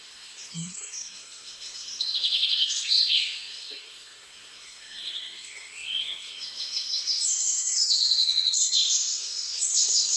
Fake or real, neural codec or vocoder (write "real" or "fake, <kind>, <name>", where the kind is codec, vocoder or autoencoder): fake, codec, SNAC